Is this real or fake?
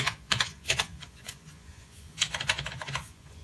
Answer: fake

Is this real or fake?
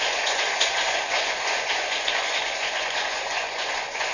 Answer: fake